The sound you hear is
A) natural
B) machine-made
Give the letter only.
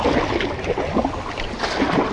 A